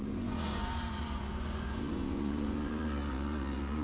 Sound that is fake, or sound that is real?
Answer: fake